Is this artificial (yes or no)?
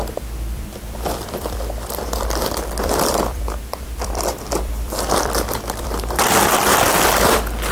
yes